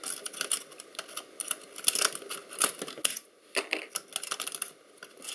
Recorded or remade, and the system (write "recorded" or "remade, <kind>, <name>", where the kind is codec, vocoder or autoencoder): recorded